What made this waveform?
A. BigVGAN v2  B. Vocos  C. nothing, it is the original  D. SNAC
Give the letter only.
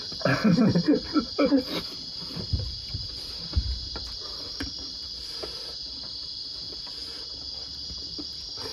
C